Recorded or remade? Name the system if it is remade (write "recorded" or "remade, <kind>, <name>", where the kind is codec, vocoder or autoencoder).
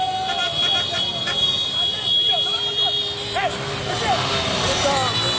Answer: recorded